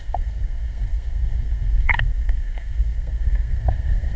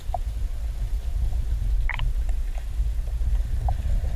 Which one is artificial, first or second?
first